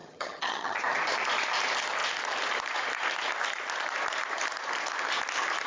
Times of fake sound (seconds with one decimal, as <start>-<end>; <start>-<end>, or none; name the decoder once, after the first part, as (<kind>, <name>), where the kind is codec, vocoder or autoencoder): 0.0-0.8 (vocoder, HiFi-GAN)